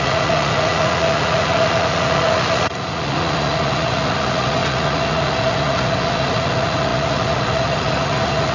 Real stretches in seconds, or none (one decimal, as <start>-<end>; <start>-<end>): none